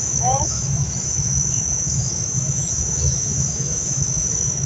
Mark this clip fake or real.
fake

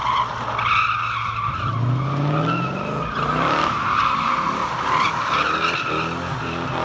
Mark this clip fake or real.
real